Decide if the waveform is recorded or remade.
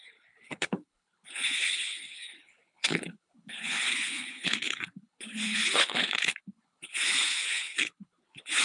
remade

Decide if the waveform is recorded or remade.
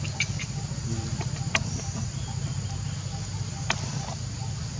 recorded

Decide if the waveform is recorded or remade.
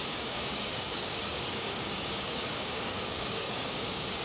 remade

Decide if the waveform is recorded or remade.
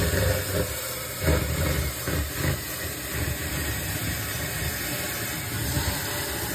remade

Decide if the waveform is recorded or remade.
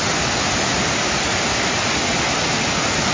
recorded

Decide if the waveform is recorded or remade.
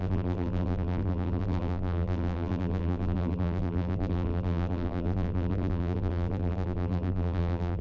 remade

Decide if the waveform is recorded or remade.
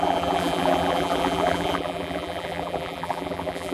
remade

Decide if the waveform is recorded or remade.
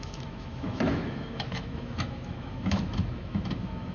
remade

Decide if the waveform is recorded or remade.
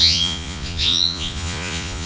remade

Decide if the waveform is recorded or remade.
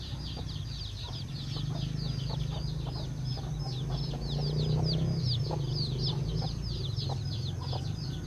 recorded